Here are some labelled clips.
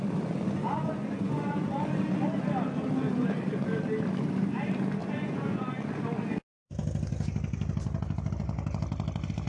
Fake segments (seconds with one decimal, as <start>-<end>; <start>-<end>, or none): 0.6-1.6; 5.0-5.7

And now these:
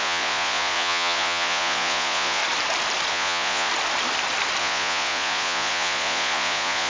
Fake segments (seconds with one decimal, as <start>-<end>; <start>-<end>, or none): 0.0-2.4; 3.1-3.7; 4.6-6.9

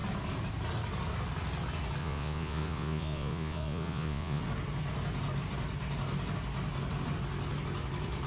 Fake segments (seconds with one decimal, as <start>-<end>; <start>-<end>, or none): 2.0-4.4

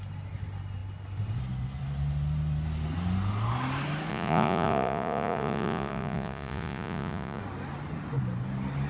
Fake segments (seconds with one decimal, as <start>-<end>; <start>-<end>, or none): 4.1-7.4

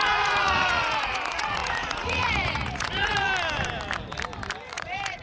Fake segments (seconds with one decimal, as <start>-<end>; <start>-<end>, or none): 0.0-3.3; 4.7-5.2

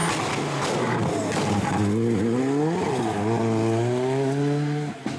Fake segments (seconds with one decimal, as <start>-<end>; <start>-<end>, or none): none